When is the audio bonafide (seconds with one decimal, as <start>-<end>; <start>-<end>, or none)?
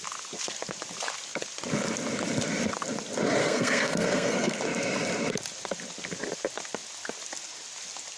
0.0-3.4; 4.6-8.2